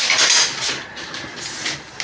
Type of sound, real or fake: real